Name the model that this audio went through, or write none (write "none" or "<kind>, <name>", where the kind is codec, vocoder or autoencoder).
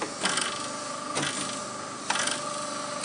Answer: none